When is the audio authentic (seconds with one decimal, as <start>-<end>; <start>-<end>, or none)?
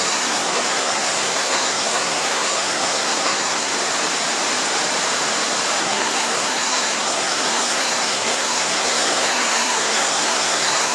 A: 3.7-5.8